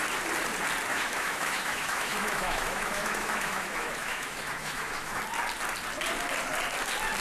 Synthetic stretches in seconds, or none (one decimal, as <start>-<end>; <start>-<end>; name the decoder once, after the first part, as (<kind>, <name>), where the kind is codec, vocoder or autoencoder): 0.9-5.2 (autoencoder, DAC-VAE)